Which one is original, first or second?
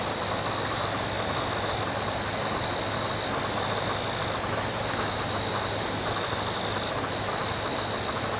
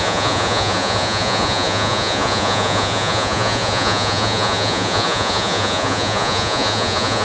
first